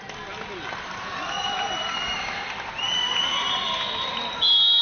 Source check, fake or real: real